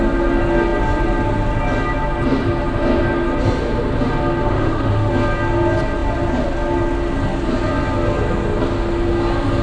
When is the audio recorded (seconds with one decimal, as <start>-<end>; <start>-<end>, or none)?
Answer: 0.0-4.4; 5.1-9.6